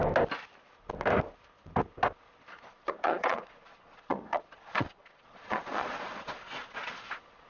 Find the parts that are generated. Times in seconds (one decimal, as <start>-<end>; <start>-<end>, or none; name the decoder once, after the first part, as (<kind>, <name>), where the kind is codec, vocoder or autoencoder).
2.7-7.5 (vocoder, Vocos)